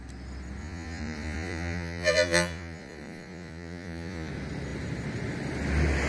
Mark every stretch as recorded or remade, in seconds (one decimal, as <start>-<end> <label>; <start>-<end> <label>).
0.0-0.6 recorded; 0.6-4.3 remade; 4.3-6.1 recorded